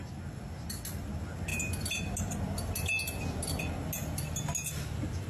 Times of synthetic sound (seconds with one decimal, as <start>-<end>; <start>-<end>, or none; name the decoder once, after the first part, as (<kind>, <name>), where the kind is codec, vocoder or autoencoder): none